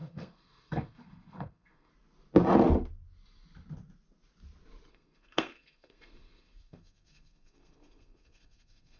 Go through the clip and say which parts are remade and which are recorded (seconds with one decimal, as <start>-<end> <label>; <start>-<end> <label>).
0.0-1.9 remade; 1.9-4.9 recorded; 4.9-9.0 remade